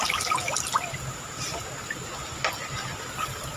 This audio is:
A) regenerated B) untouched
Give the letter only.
B